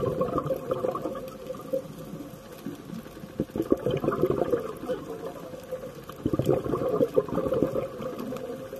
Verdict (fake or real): real